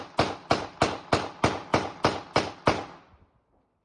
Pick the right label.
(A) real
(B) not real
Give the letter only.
A